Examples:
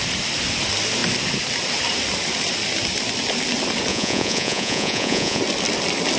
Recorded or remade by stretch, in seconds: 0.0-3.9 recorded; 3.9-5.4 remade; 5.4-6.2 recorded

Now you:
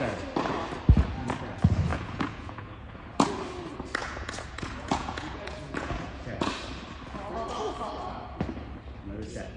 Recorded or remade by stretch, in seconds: 0.0-1.9 recorded; 1.9-3.0 remade; 3.0-4.0 recorded; 4.0-6.5 remade; 6.5-9.6 recorded

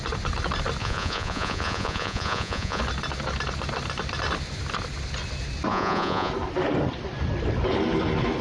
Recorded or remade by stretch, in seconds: 0.0-0.8 recorded; 0.8-2.8 remade; 2.8-5.7 recorded; 5.7-6.3 remade; 6.3-8.4 recorded

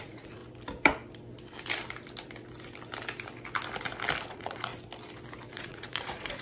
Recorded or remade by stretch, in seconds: 0.0-0.4 remade; 0.4-4.2 recorded; 4.2-4.7 remade; 4.7-5.5 recorded; 5.5-6.4 remade

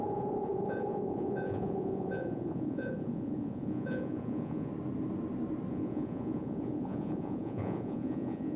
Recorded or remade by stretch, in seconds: 0.0-4.7 remade; 4.7-5.7 recorded; 5.7-8.6 remade

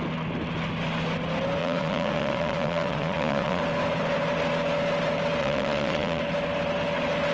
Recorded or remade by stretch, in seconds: 0.0-1.6 recorded; 1.6-3.6 remade; 3.6-5.4 recorded; 5.4-6.2 remade; 6.2-7.3 recorded